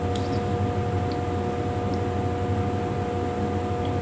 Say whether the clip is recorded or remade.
recorded